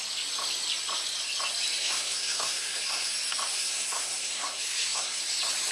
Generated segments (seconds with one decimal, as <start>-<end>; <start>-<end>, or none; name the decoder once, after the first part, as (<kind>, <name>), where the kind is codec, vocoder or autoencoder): 1.8-3.1 (codec, SNAC); 3.5-5.2